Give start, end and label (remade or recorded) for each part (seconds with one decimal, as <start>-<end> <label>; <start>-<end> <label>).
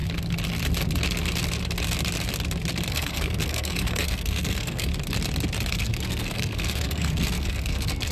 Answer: 0.0-2.9 recorded; 2.9-4.9 remade; 4.9-5.7 recorded; 5.7-8.1 remade